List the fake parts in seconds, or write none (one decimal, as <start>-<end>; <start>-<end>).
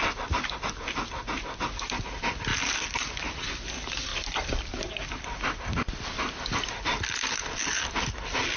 4.1-7.9